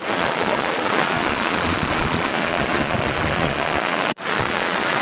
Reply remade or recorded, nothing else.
remade